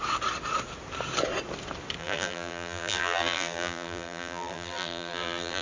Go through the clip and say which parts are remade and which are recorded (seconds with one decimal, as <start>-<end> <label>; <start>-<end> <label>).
0.0-2.0 recorded; 2.0-5.6 remade